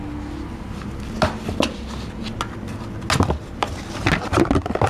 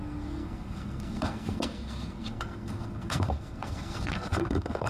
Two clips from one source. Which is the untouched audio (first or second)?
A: first